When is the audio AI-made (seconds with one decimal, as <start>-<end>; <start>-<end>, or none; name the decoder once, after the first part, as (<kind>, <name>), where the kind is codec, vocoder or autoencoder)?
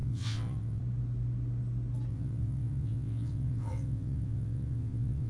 0.0-0.8 (vocoder, WaveNeXt); 2.1-5.3